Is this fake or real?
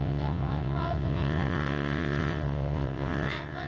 fake